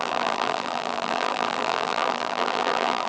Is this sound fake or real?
fake